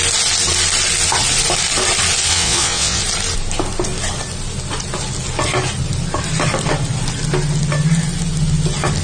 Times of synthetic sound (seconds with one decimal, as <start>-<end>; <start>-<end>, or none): 2.3-3.0